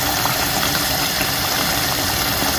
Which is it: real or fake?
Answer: fake